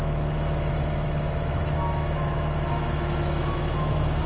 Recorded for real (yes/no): no